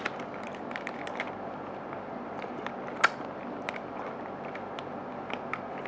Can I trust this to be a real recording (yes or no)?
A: yes